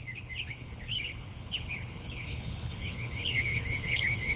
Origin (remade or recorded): remade